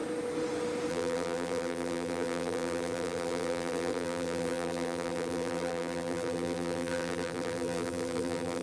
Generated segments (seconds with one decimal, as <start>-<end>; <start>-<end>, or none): 0.9-8.6